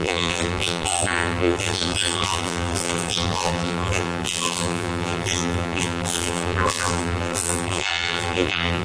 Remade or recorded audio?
remade